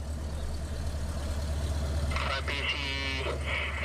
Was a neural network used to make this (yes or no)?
no